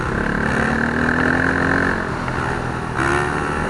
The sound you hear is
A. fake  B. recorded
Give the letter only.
B